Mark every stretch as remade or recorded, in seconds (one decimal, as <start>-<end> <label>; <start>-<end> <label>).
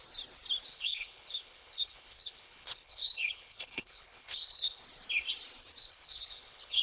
0.0-0.7 recorded; 0.7-4.8 remade; 4.8-5.8 recorded; 5.8-6.8 remade